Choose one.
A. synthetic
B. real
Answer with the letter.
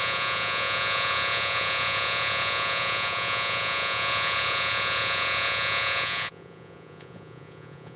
A